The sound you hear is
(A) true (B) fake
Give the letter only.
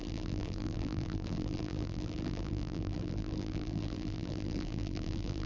B